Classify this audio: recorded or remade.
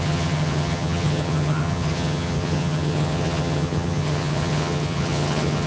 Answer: remade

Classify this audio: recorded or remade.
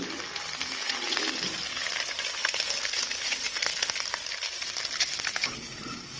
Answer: recorded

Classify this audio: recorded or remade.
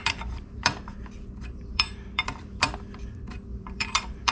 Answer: remade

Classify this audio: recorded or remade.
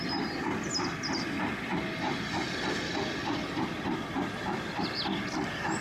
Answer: recorded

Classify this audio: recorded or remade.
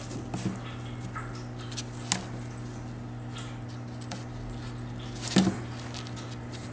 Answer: recorded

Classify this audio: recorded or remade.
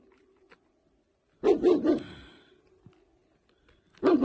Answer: remade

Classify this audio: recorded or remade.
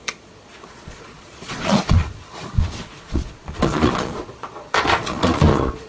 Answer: remade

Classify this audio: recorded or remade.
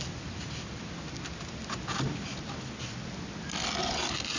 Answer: recorded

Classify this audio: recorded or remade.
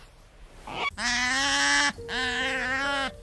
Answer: recorded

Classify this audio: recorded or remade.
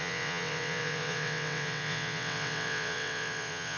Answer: remade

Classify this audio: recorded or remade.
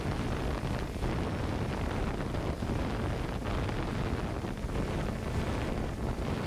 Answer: recorded